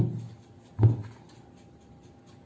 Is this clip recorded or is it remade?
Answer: recorded